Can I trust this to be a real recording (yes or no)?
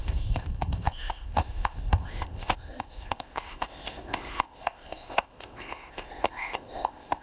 no